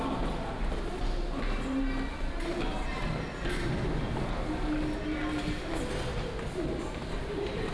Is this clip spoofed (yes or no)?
no